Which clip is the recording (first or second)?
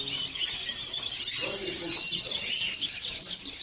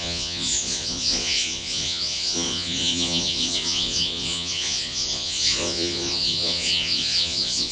first